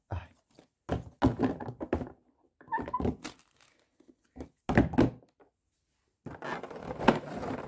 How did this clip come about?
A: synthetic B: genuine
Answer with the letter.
B